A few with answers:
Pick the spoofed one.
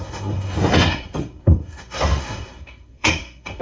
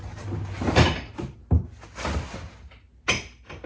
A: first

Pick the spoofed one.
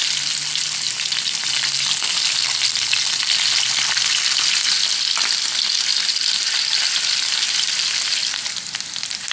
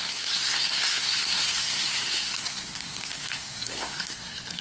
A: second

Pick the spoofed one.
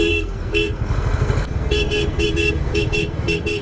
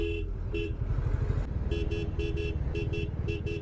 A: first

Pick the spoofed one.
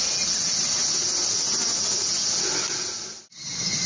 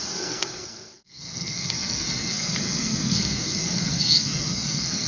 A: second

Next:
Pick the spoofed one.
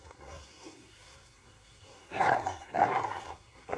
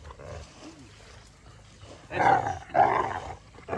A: first